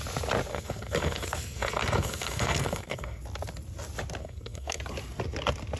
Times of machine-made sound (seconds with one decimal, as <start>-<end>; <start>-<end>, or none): 0.5-3.2; 4.2-4.8